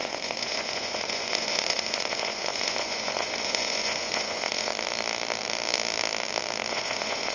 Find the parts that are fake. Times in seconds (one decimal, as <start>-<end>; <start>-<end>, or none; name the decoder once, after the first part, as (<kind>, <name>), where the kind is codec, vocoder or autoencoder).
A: 0.0-4.7 (vocoder, Vocos); 6.7-7.3